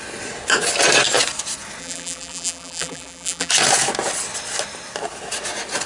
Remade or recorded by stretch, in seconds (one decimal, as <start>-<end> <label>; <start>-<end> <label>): 0.0-1.8 recorded; 1.8-3.5 remade; 3.5-5.9 recorded